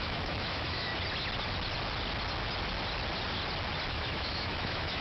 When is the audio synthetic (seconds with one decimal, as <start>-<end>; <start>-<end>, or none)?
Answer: 0.0-0.9; 3.9-5.0